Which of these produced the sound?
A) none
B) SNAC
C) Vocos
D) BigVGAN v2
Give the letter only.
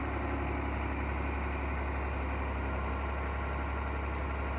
A